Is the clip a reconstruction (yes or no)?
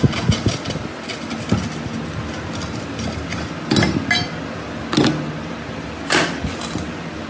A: no